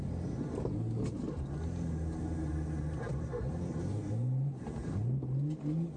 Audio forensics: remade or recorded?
recorded